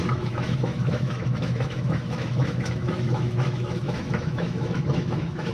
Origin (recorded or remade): remade